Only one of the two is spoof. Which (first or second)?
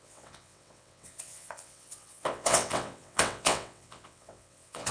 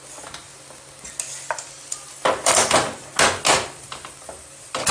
first